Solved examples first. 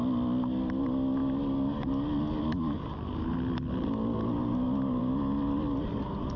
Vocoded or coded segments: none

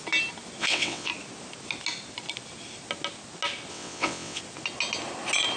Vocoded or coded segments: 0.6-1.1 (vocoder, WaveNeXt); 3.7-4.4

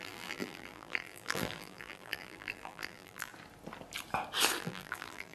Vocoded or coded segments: 0.0-3.3 (vocoder, BigVGAN v2); 4.6-5.3

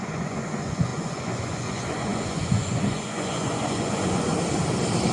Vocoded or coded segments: 0.0-4.3 (vocoder, Vocos)

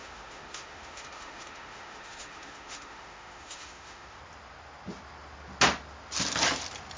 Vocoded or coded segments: 0.0-4.2 (autoencoder, DAC-VAE)

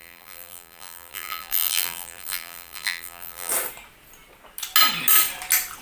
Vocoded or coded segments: 0.0-3.5 (vocoder, BigVGAN v2)

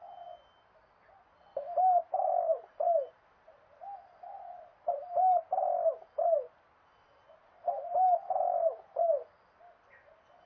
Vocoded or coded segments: none